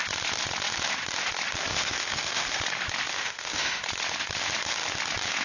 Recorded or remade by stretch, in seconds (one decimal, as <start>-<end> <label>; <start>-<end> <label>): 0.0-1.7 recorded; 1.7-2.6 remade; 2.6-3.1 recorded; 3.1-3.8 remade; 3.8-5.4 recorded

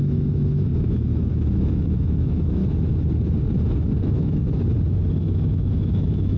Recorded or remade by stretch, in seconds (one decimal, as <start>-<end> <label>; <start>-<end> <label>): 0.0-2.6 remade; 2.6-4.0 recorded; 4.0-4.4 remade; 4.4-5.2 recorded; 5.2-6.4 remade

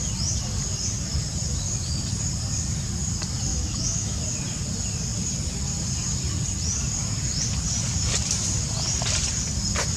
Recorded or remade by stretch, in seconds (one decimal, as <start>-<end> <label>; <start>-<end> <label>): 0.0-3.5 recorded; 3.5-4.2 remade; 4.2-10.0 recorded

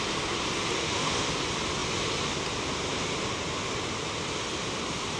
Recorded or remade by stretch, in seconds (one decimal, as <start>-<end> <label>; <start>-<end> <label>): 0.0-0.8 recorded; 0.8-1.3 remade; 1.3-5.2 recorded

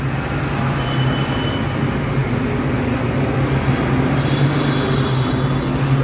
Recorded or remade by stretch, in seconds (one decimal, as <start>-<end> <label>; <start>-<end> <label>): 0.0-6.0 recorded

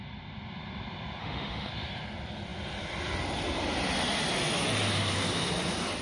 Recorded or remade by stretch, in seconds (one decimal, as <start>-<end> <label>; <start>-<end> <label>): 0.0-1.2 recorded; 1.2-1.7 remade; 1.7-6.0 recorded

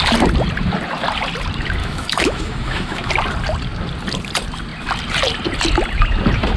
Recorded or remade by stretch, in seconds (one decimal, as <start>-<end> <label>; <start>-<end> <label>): 0.0-1.8 recorded; 1.8-3.1 remade; 3.1-6.6 recorded

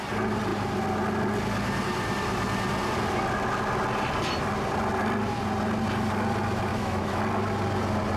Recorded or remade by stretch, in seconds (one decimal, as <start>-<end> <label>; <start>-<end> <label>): 0.0-6.7 recorded; 6.7-7.2 remade; 7.2-8.2 recorded